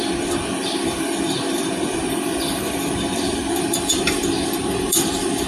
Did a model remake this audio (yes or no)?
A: yes